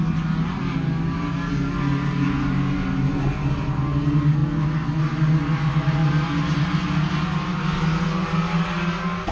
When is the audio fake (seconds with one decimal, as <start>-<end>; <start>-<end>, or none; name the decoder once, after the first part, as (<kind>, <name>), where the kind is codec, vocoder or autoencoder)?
none